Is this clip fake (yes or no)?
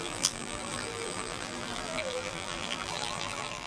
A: yes